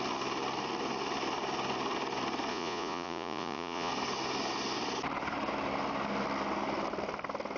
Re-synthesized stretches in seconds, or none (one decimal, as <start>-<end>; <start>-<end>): 2.5-3.9